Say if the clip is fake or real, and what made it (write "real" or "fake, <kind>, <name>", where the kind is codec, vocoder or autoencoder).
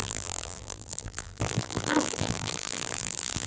fake, vocoder, BigVGAN v2